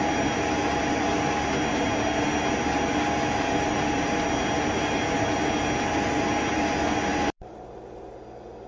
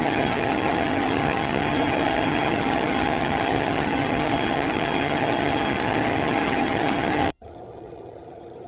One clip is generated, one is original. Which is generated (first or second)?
second